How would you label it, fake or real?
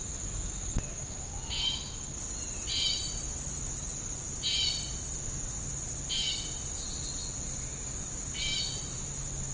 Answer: real